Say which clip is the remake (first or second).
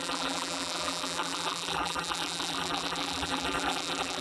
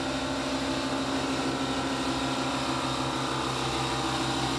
first